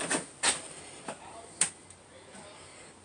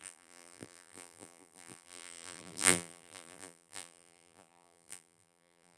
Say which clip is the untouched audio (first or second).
first